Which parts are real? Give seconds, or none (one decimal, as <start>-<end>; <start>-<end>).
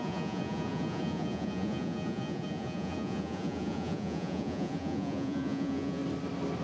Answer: 6.0-6.6